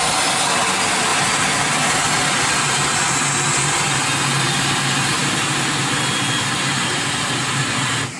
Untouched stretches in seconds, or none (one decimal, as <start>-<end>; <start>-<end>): 0.0-8.2